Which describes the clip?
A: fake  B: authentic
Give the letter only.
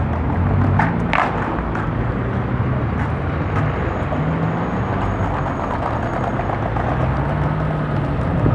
B